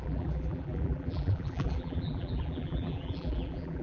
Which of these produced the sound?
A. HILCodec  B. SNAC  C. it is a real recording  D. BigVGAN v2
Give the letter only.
D